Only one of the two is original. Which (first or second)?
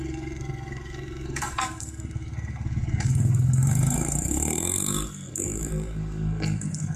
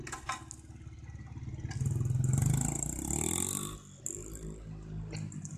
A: second